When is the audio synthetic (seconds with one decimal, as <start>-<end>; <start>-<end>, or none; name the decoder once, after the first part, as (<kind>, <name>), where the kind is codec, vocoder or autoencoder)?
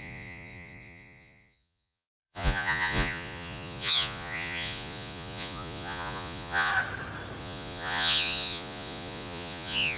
0.0-6.7 (vocoder, Vocos); 7.4-10.0